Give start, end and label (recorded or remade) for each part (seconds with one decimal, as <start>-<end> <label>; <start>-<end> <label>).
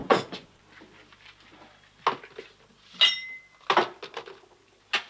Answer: 0.0-0.6 remade; 0.6-5.1 recorded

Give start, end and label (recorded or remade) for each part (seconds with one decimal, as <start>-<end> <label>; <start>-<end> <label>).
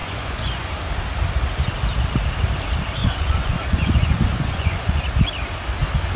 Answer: 0.0-0.7 remade; 0.7-3.0 recorded; 3.0-5.0 remade; 5.0-6.2 recorded